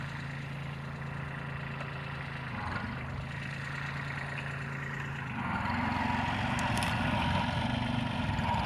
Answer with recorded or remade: recorded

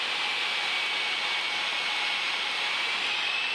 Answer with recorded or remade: recorded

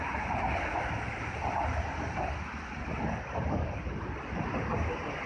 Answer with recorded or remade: recorded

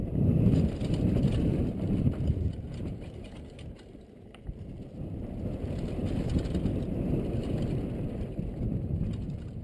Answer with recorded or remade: remade